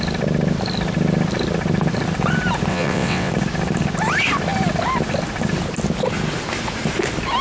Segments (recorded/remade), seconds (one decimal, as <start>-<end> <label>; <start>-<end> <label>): 0.0-2.7 recorded; 2.7-3.3 remade; 3.3-7.4 recorded